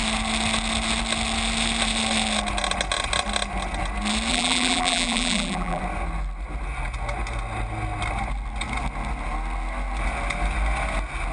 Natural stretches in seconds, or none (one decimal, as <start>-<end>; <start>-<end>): 0.0-4.3; 5.8-11.3